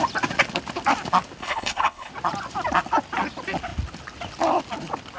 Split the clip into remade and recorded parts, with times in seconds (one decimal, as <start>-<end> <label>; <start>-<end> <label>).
0.0-1.4 recorded; 1.4-2.1 remade; 2.1-5.2 recorded